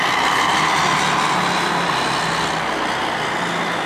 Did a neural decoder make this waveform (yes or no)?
no